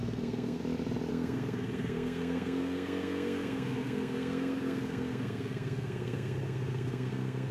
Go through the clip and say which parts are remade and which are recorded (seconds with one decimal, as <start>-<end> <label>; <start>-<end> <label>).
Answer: 0.0-0.6 remade; 0.6-1.1 recorded; 1.1-7.5 remade